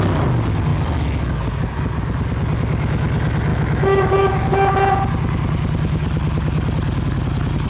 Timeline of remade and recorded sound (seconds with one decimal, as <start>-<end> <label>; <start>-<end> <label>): 0.0-3.5 recorded; 3.5-4.5 remade; 4.5-7.7 recorded